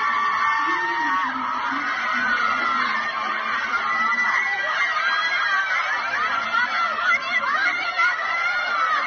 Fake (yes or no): no